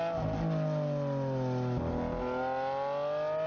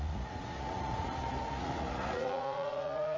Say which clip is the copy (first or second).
second